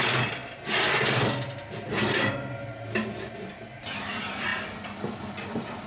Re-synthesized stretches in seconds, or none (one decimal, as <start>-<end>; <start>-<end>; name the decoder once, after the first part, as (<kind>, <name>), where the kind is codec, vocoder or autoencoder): none